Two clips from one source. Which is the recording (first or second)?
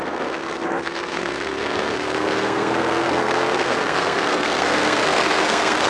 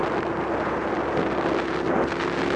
second